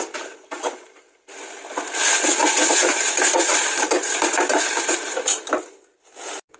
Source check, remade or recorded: recorded